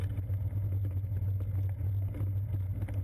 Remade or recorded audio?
recorded